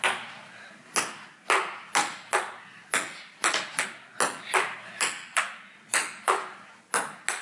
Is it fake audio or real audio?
real